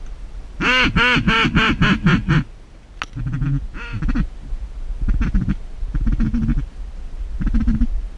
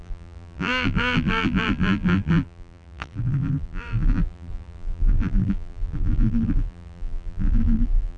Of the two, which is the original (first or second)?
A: first